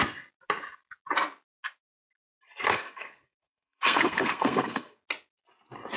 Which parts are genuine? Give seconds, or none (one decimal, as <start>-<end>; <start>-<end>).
0.0-2.7; 5.0-6.0